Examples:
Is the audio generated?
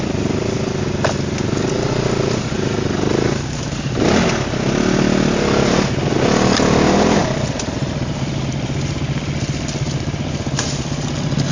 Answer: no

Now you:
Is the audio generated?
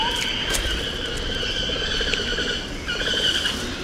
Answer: no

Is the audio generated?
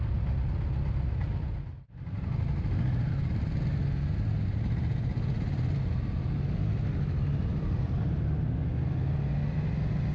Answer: no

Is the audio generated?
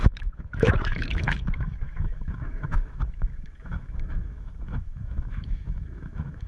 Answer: yes